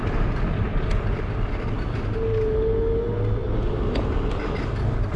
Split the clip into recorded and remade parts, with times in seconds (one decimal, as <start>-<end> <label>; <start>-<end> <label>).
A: 0.0-0.7 recorded; 0.7-2.0 remade; 2.0-5.2 recorded